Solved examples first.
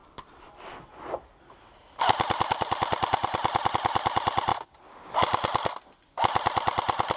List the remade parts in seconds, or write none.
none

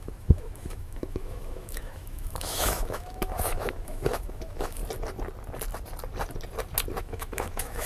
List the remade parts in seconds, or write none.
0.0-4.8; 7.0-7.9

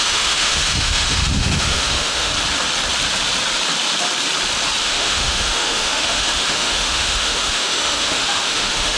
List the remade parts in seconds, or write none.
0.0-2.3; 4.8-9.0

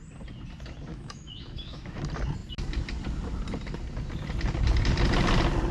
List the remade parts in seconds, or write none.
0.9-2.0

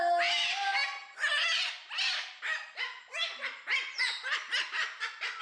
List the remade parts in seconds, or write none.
none

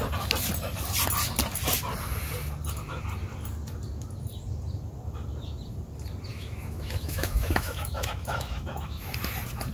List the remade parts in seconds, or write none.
6.3-9.1

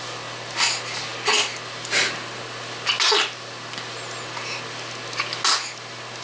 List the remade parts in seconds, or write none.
none